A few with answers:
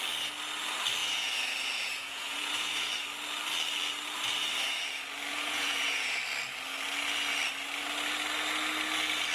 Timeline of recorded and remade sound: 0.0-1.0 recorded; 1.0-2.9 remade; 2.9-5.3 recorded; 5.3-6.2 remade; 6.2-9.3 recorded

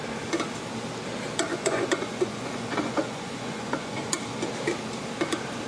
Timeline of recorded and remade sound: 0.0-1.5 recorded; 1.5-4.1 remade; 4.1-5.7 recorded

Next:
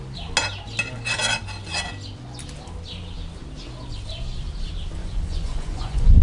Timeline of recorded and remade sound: 0.0-5.0 recorded; 5.0-6.2 remade